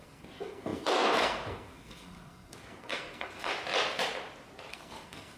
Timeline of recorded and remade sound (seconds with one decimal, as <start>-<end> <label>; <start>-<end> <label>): 0.0-3.5 remade; 3.5-4.7 recorded; 4.7-5.4 remade